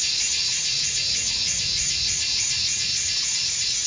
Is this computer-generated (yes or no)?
yes